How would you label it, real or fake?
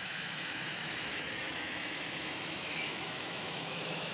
fake